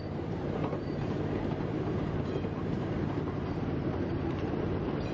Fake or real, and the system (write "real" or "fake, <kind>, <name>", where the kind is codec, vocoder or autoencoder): fake, vocoder, BigVGAN v2